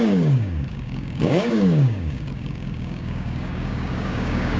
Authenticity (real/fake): fake